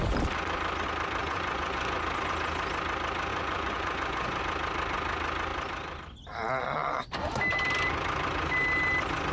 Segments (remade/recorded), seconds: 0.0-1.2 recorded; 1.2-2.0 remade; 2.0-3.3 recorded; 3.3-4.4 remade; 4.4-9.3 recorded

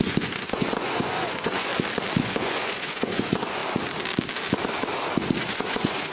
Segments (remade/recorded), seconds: 0.0-1.7 remade; 1.7-2.2 recorded; 2.2-3.6 remade; 3.6-5.4 recorded; 5.4-6.1 remade

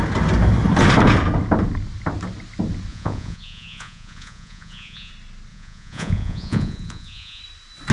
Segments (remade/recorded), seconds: 0.0-2.9 recorded; 2.9-5.1 remade; 5.1-5.5 recorded; 5.5-7.4 remade; 7.4-7.9 recorded

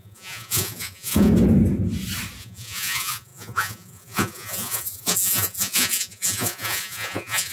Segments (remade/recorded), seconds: 0.0-1.3 remade; 1.3-2.4 recorded; 2.4-7.5 remade

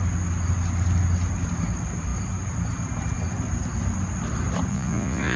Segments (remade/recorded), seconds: 0.0-4.7 recorded; 4.7-5.4 remade

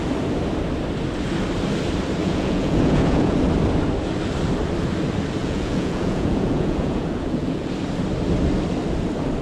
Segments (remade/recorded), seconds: 0.0-2.2 recorded; 2.2-3.4 remade; 3.4-5.4 recorded; 5.4-7.7 remade; 7.7-9.4 recorded